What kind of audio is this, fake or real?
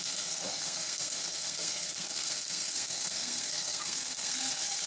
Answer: fake